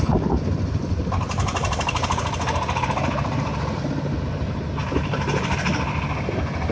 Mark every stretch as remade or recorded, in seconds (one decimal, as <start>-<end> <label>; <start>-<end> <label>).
0.0-6.7 recorded

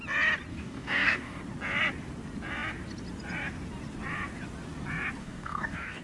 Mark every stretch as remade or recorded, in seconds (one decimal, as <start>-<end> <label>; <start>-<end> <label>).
0.0-0.5 recorded; 0.5-1.4 remade; 1.4-5.2 recorded; 5.2-6.0 remade

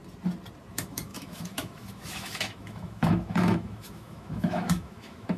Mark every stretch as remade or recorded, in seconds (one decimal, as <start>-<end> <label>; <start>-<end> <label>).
0.0-0.7 recorded; 0.7-5.4 remade

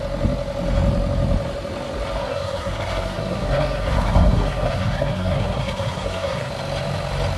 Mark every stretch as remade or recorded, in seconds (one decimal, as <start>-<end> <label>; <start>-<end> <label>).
0.0-2.2 recorded; 2.2-6.5 remade; 6.5-7.4 recorded

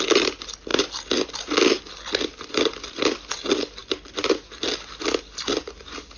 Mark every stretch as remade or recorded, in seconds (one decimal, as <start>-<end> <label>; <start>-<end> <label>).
0.0-6.2 recorded

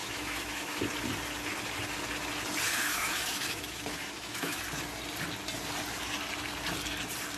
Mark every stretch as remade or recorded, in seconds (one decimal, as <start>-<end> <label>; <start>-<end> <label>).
0.0-0.8 remade; 0.8-2.7 recorded; 2.7-4.6 remade; 4.6-7.4 recorded

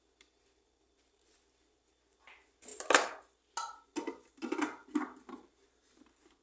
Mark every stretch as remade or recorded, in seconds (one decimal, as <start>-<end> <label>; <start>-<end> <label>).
0.0-6.4 recorded

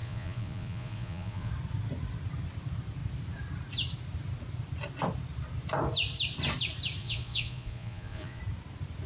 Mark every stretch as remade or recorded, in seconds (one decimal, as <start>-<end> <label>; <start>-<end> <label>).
0.0-1.5 remade; 1.5-7.0 recorded; 7.0-8.4 remade; 8.4-9.1 recorded